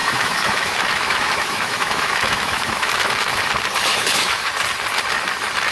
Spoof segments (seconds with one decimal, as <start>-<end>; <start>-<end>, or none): 0.0-3.4; 3.9-4.5